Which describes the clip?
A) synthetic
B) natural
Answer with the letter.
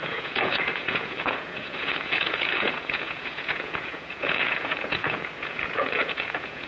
A